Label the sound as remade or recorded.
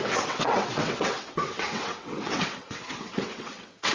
remade